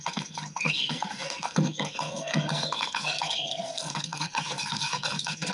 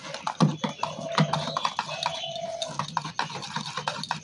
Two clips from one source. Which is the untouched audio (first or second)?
second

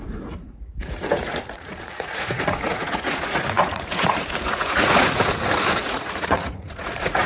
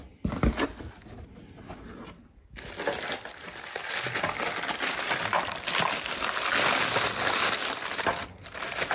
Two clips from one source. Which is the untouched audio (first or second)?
second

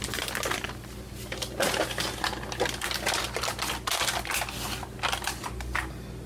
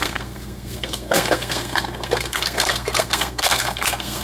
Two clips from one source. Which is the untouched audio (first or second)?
first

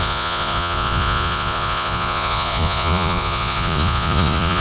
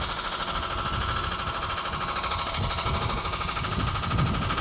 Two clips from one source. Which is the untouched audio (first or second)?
second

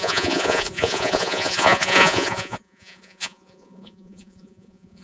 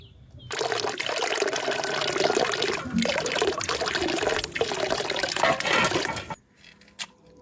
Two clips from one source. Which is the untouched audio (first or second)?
second